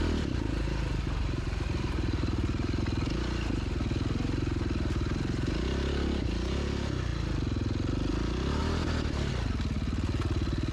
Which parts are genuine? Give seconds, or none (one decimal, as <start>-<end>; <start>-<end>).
0.0-0.9; 2.8-8.6; 9.3-10.7